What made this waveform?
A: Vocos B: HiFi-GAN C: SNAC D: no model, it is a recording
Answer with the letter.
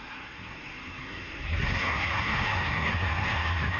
C